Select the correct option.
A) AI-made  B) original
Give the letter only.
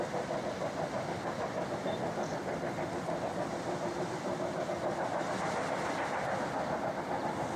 B